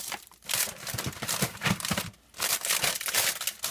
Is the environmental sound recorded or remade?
remade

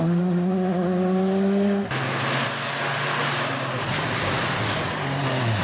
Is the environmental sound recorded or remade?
recorded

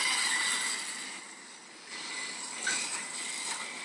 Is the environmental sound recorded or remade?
recorded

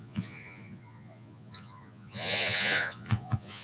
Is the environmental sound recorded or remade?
remade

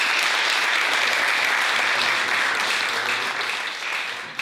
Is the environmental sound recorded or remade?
recorded